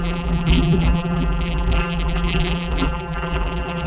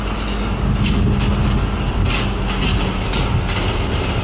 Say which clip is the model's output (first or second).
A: first